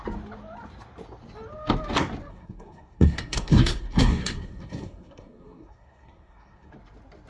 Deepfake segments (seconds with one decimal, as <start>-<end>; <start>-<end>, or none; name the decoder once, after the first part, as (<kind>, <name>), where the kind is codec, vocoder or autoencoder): 2.3-6.7 (codec, SNAC)